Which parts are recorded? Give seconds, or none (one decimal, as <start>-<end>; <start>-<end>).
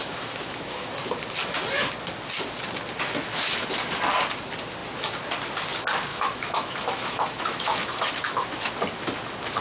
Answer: 0.9-6.1; 8.7-9.6